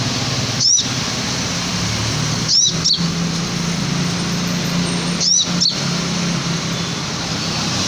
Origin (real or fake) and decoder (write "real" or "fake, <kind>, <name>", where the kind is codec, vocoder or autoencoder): real